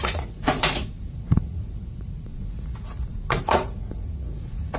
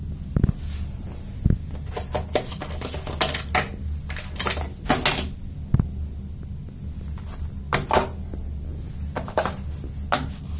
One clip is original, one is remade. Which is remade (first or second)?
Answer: first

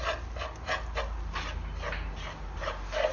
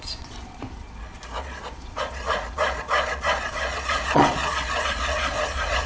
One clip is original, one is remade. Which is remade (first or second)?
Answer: second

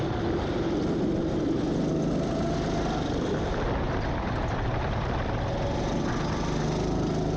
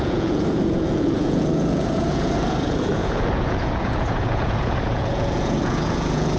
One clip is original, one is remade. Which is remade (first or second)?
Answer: second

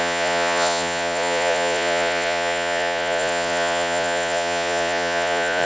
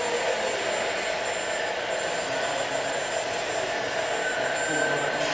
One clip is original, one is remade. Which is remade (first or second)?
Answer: first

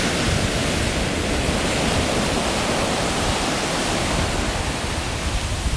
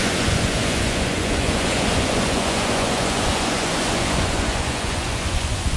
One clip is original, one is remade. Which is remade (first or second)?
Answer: second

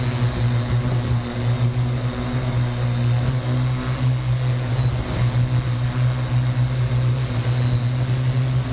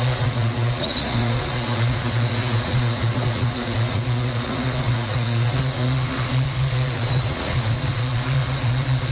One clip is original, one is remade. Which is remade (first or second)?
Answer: second